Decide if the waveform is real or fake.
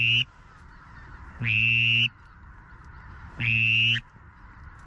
real